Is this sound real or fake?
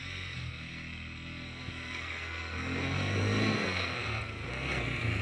fake